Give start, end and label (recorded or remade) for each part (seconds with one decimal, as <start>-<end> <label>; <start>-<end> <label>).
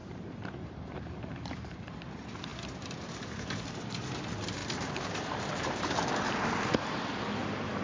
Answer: 0.0-7.8 remade